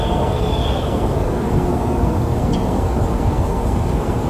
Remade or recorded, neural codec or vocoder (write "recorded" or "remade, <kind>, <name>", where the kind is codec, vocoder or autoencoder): remade, codec, SNAC